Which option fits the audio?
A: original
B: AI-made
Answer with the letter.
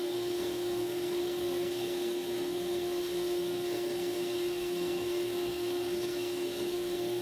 B